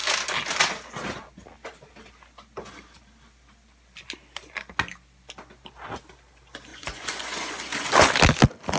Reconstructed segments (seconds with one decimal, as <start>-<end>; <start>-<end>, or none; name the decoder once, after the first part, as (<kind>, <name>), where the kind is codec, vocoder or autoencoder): 6.7-7.9 (vocoder, Vocos)

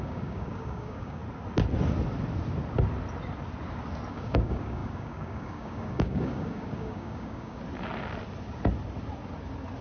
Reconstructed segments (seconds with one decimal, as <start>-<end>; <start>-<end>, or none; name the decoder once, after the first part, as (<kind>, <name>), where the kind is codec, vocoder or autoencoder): 0.0-1.2 (codec, DAC); 4.1-7.6

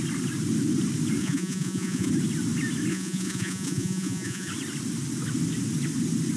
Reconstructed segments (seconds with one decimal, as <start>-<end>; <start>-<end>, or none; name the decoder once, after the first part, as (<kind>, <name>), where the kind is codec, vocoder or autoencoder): 1.2-2.1 (vocoder, Vocos); 2.9-4.5

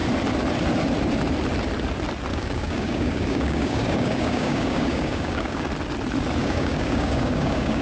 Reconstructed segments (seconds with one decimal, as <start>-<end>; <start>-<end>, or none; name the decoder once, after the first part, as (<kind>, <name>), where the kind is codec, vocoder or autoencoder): 2.3-5.7 (codec, DAC); 6.4-7.8

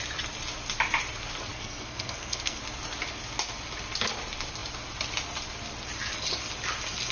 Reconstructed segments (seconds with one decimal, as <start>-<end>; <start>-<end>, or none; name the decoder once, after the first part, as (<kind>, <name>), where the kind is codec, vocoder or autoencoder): 1.5-2.6 (codec, SNAC)

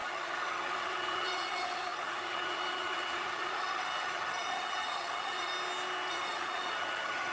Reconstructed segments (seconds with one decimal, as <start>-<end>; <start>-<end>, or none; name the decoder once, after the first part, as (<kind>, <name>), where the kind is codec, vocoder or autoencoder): 0.0-5.5 (vocoder, HiFi-GAN); 6.1-7.3

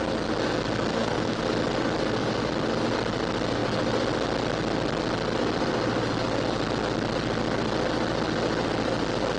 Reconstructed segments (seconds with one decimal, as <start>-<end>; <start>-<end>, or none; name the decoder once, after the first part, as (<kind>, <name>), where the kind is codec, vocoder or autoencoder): 0.9-1.4 (codec, SNAC)